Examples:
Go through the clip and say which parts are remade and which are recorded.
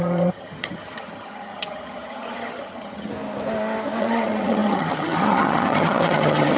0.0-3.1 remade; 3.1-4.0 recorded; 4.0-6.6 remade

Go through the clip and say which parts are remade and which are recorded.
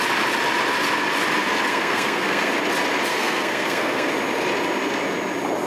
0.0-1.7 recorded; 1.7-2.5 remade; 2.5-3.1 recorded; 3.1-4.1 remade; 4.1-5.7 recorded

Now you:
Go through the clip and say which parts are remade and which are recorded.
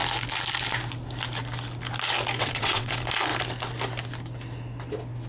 0.0-2.4 recorded; 2.4-2.9 remade; 2.9-5.3 recorded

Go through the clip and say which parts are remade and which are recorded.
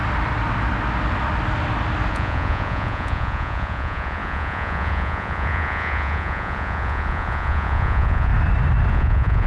0.0-2.1 recorded; 2.1-8.3 remade; 8.3-8.9 recorded; 8.9-9.5 remade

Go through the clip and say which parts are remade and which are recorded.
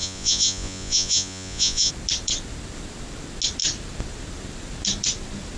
0.0-1.9 remade; 1.9-5.6 recorded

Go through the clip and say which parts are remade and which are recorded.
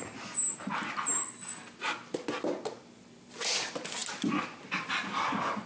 0.0-5.7 recorded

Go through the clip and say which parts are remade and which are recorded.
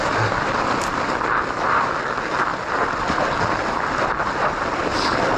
0.0-2.5 recorded; 2.5-3.2 remade; 3.2-5.4 recorded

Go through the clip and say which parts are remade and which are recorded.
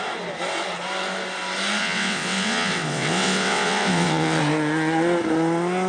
0.0-1.8 recorded; 1.8-4.4 remade; 4.4-5.9 recorded